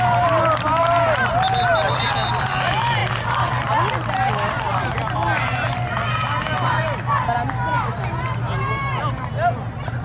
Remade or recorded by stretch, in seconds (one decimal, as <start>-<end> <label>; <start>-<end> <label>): 0.0-10.0 recorded